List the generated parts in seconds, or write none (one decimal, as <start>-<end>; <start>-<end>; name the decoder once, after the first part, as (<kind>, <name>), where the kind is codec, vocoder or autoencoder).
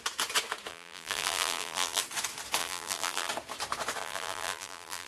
0.7-2.0 (vocoder, BigVGAN v2); 2.6-3.3; 4.0-5.1